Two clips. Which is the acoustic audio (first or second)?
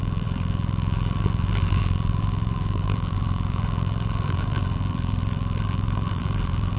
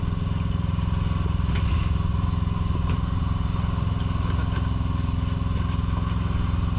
second